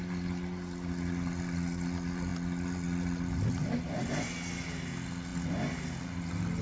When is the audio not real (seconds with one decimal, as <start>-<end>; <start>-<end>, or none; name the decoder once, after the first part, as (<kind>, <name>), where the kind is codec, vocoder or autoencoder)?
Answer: none